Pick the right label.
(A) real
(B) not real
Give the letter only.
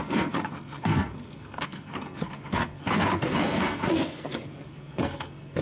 B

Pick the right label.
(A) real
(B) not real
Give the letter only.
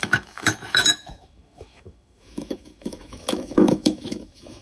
B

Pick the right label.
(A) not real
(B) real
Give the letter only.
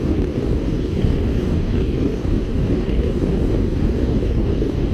A